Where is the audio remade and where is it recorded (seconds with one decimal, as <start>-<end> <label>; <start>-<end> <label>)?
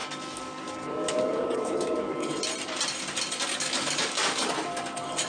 0.0-2.3 remade; 2.3-3.5 recorded; 3.5-4.5 remade; 4.5-5.3 recorded